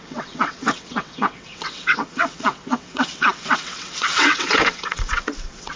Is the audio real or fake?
fake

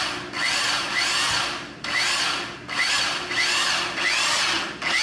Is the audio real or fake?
real